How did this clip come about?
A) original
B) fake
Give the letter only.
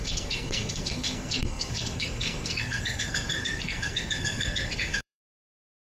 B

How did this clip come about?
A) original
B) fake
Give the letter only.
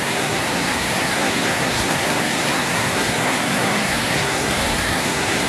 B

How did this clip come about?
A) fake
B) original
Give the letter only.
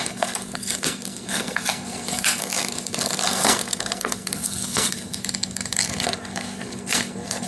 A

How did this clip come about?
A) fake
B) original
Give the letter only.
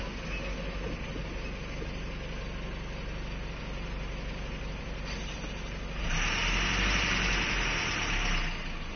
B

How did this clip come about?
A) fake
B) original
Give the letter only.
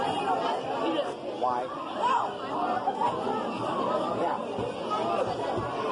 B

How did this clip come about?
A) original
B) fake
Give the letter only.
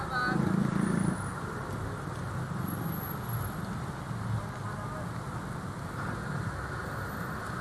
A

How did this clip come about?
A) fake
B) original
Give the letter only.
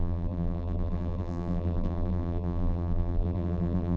A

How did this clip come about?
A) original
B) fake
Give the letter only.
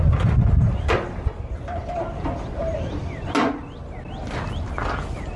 A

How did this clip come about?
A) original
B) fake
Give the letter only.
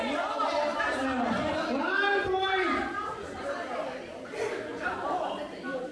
A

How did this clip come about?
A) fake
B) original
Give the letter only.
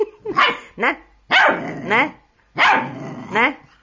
B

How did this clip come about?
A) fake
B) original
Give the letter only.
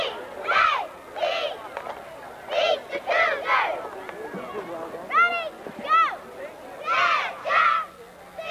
B